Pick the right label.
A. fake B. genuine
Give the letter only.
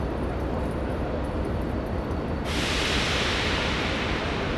B